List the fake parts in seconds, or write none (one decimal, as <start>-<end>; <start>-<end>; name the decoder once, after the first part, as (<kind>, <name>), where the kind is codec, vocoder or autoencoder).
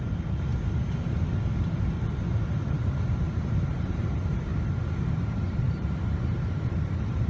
0.0-0.5 (vocoder, BigVGAN v2); 2.7-4.5; 5.1-7.3